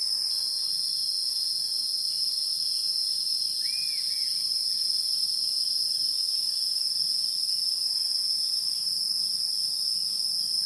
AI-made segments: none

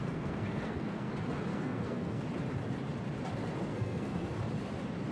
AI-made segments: 0.0-1.1 (codec, SNAC); 1.5-2.2; 3.7-4.3

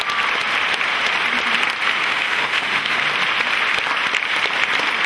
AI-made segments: 2.0-3.0 (autoencoder, DAC-VAE)